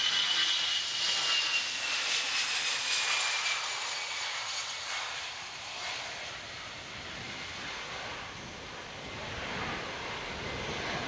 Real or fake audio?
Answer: real